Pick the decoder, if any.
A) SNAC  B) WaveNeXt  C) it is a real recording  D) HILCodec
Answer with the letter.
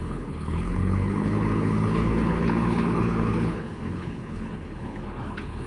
D